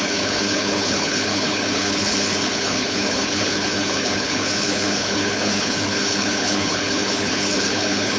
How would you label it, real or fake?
fake